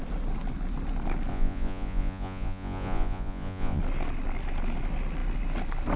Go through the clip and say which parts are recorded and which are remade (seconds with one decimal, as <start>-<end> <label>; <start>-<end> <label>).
0.0-1.3 recorded; 1.3-3.8 remade; 3.8-6.0 recorded